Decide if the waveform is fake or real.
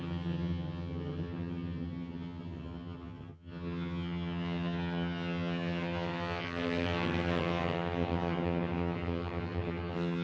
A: fake